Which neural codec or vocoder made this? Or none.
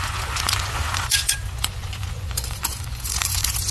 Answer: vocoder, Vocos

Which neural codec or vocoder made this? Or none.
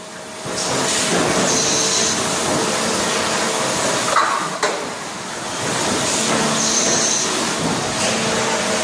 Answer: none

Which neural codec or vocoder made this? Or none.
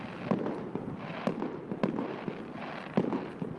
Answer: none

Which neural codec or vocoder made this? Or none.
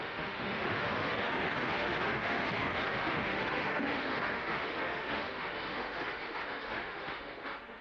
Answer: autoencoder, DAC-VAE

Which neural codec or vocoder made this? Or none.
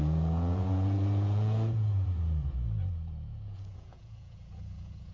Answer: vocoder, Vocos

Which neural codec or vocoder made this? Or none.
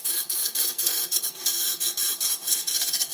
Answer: codec, SNAC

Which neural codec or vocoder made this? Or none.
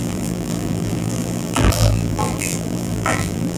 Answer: vocoder, BigVGAN v2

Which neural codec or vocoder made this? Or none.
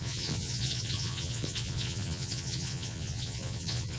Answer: vocoder, Vocos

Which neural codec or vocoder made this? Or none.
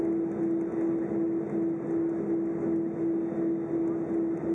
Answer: none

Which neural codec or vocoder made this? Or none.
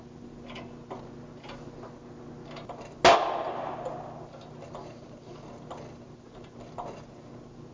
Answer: none